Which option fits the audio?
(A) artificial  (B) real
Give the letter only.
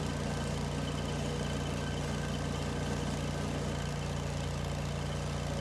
B